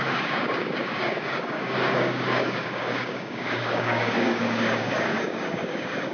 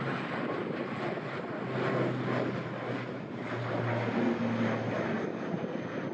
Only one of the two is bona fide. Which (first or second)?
second